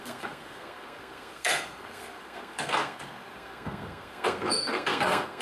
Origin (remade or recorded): remade